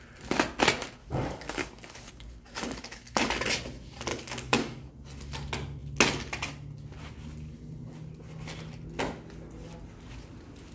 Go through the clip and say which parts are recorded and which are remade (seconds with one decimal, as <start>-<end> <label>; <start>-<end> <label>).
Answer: 0.0-1.0 recorded; 1.0-3.3 remade; 3.3-4.1 recorded; 4.1-4.9 remade; 4.9-10.7 recorded